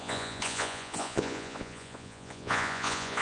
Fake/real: fake